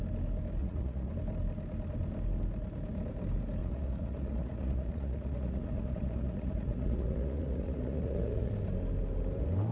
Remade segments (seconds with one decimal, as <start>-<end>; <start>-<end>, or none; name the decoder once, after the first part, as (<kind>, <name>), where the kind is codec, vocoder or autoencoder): 0.6-1.1 (vocoder, Vocos); 3.6-8.5